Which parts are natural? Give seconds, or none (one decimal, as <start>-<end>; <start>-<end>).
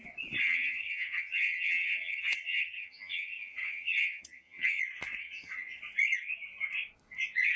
0.0-0.4; 4.8-5.2; 5.8-7.6